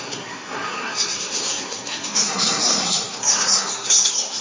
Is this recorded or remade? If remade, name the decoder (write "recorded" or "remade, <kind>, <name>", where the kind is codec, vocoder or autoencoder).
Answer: remade, codec, SNAC